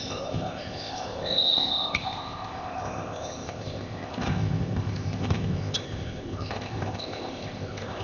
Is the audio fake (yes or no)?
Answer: yes